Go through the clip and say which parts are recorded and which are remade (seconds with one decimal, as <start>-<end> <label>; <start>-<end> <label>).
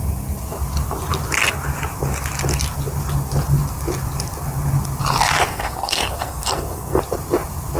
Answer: 0.0-5.5 recorded; 5.5-7.0 remade; 7.0-7.8 recorded